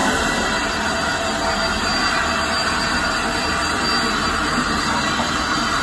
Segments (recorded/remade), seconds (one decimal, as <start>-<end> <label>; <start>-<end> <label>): 0.0-5.8 recorded